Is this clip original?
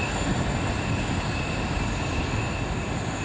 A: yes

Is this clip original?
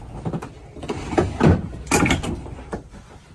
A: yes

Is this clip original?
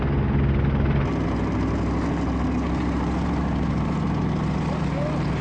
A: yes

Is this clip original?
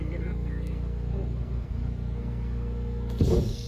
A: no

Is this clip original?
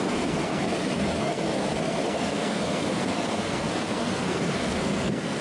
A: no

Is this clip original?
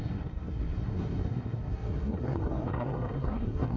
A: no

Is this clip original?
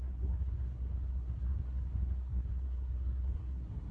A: no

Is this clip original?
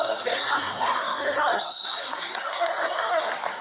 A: no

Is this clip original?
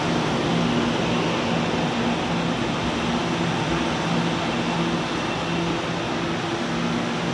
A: yes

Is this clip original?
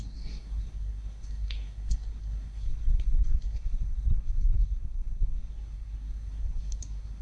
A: no